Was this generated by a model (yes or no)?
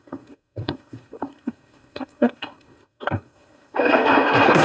yes